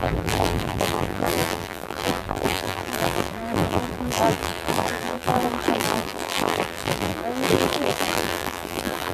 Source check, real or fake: fake